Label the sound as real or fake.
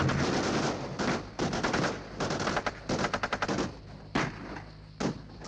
real